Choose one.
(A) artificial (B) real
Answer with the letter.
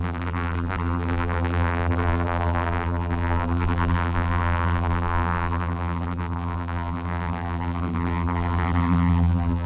A